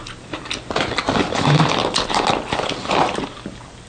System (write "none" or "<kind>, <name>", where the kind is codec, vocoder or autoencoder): none